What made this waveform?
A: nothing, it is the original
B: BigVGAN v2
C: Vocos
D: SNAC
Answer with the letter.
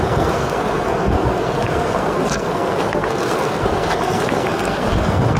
D